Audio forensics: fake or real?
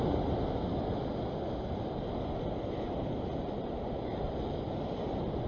real